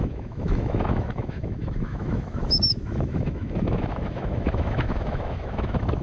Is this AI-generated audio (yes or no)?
yes